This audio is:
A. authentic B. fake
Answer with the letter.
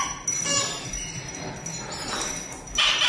A